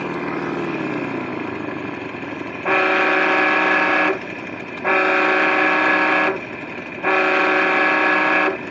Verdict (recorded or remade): recorded